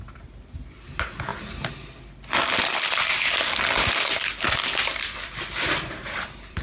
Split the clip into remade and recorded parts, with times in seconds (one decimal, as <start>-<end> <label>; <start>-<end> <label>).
0.0-1.3 remade; 1.3-4.1 recorded; 4.1-6.6 remade